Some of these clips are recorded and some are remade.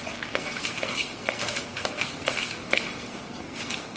remade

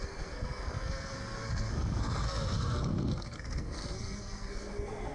remade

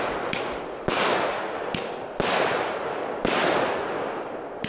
recorded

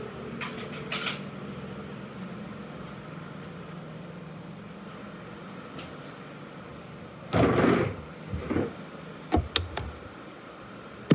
recorded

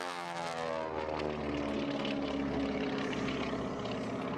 recorded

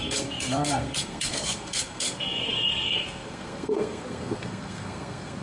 remade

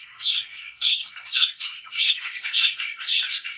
remade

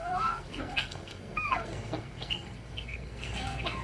remade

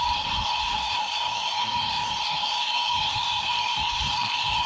remade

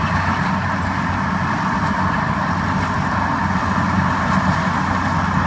recorded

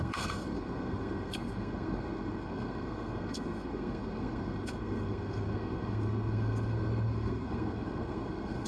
remade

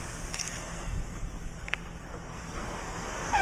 remade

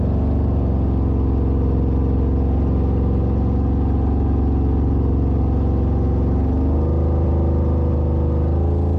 recorded